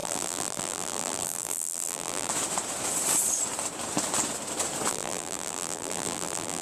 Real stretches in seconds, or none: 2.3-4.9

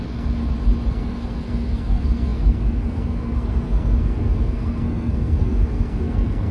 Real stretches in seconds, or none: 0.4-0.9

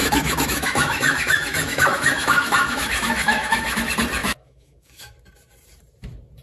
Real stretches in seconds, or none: 3.8-4.2; 5.1-6.4

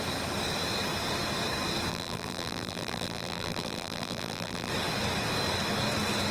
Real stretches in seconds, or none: 0.0-1.9; 4.7-6.3